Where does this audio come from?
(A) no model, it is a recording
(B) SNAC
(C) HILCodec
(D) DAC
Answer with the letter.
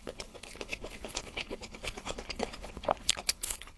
C